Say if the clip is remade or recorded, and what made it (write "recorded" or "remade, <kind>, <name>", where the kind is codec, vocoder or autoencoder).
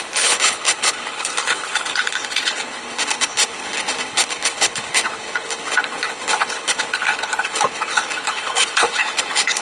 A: remade, codec, HILCodec